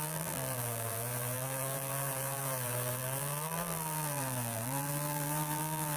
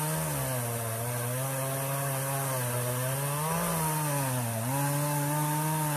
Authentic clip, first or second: second